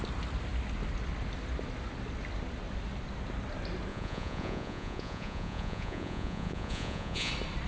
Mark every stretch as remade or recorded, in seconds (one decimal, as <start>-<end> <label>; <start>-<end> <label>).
0.0-3.9 recorded; 3.9-7.3 remade; 7.3-7.7 recorded